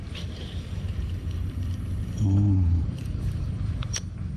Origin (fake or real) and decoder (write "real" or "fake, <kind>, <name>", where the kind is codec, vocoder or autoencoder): fake, vocoder, BigVGAN v2